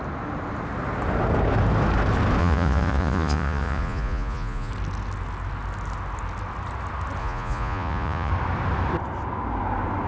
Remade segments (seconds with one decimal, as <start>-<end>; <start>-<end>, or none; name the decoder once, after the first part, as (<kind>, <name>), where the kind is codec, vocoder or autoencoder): 2.4-4.7 (vocoder, Vocos); 7.2-8.3